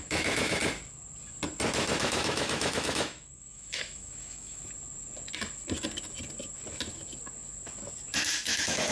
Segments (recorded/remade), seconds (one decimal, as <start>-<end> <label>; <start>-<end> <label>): 0.0-0.6 remade; 0.6-2.0 recorded; 2.0-4.6 remade; 4.6-8.2 recorded; 8.2-8.9 remade